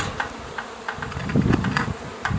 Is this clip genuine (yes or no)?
yes